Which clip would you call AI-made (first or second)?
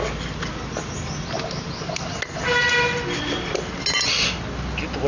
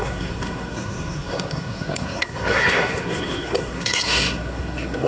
second